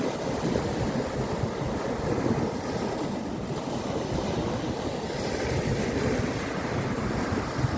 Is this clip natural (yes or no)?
yes